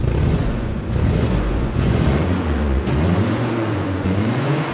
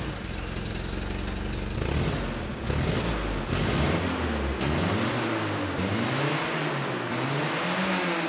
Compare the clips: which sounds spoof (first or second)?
first